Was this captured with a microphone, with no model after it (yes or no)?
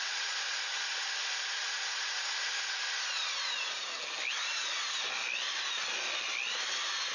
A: yes